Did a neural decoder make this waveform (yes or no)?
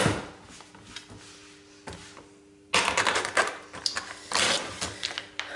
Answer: no